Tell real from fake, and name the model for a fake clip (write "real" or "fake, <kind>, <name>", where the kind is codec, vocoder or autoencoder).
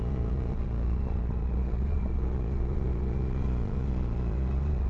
fake, vocoder, Vocos